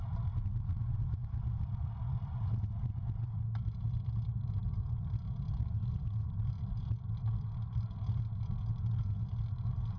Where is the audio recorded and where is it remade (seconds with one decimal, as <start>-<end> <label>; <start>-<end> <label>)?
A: 0.0-10.0 recorded